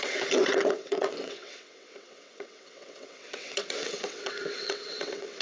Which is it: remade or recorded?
remade